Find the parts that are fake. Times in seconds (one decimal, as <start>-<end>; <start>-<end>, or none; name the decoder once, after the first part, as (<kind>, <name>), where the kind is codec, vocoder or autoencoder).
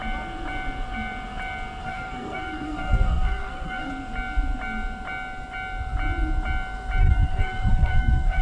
1.8-3.9 (codec, SNAC); 7.0-8.4